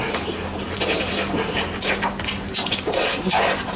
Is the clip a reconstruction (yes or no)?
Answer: no